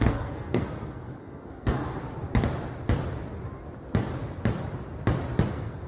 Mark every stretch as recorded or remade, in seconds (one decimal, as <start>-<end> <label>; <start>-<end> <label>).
0.0-2.0 remade; 2.0-5.5 recorded; 5.5-5.9 remade